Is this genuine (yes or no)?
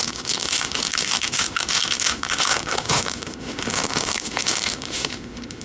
no